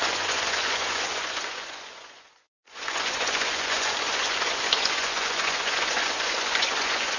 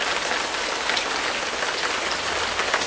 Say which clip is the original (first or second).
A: second